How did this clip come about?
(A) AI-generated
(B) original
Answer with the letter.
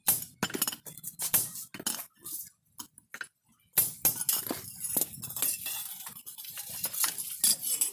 B